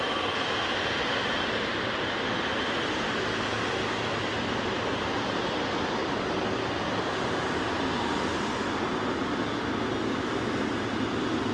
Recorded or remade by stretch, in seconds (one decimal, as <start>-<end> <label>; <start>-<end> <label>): 0.0-6.0 remade; 6.0-10.3 recorded; 10.3-11.5 remade